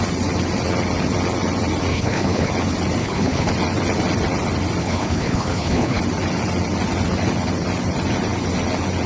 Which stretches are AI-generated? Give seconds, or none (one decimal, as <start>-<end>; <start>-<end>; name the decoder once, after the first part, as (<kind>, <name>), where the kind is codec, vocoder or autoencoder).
1.9-2.5 (codec, HILCodec); 3.0-3.5; 4.8-6.0